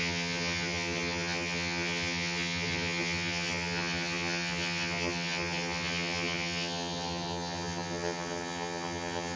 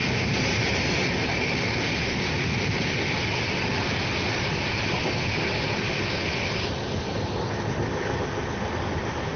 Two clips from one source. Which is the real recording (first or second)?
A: second